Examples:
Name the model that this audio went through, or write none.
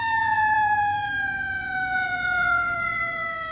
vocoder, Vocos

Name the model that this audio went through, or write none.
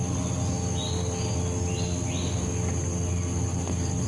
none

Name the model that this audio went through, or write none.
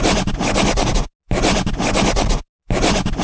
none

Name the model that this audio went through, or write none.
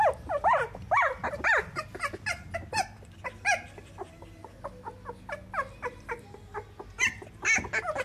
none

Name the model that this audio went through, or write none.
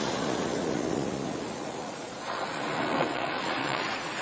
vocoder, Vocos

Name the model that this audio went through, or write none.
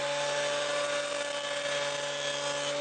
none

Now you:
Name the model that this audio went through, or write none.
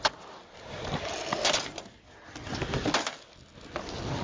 none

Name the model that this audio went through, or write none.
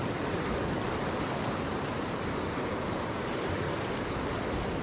none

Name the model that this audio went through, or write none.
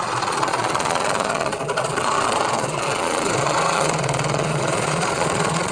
vocoder, Vocos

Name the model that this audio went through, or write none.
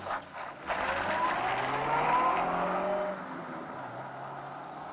none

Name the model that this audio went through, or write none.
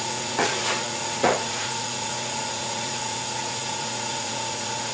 vocoder, Vocos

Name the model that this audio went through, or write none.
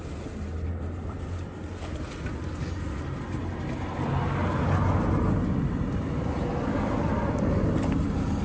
none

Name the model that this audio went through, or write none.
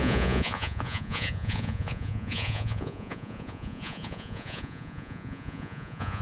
vocoder, Vocos